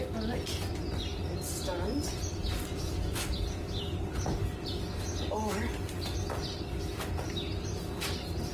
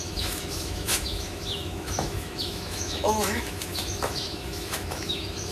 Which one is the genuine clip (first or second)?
first